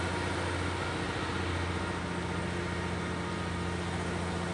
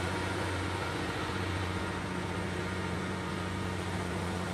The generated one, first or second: second